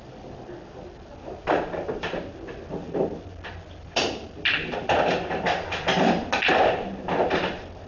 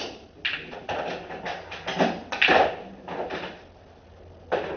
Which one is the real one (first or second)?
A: second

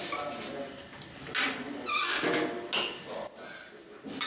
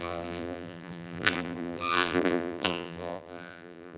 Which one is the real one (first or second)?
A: first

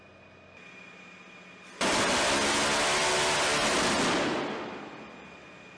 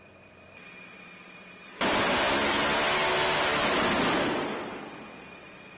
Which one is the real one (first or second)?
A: first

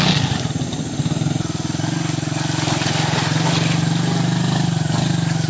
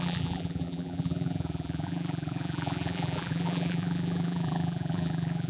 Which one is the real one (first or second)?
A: first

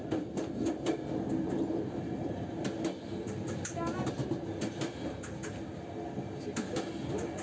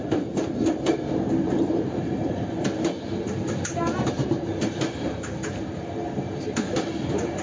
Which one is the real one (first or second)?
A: first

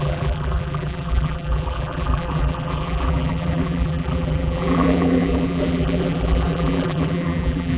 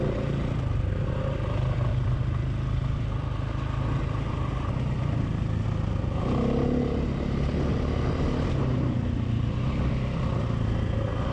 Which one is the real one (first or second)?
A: second